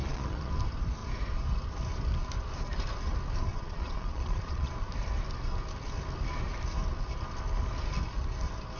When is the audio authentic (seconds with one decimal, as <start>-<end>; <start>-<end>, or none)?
0.5-3.5; 4.7-8.8